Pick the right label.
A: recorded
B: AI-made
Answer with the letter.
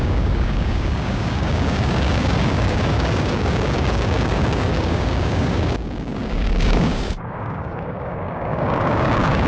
B